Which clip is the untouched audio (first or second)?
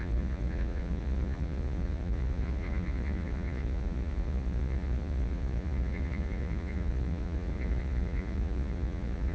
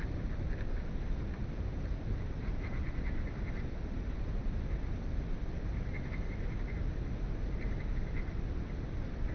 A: second